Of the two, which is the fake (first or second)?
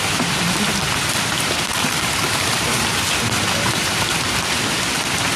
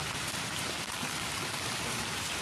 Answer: first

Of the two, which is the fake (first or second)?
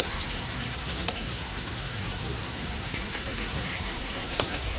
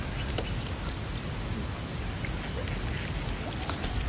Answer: first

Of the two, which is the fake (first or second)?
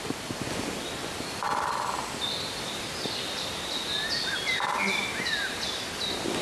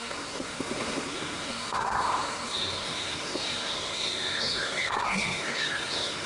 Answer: second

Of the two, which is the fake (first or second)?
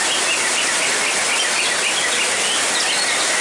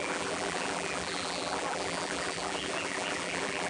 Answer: second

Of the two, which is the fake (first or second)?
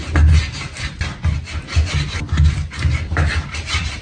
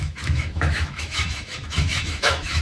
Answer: second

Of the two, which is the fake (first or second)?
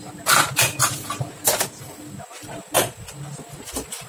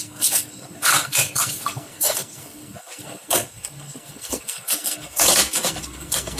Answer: second